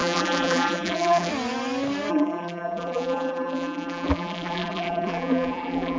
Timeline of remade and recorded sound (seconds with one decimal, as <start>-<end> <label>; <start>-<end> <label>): 0.0-1.3 remade; 1.3-2.1 recorded; 2.1-6.0 remade